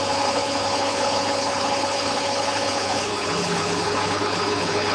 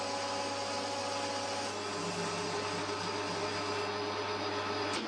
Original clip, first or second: second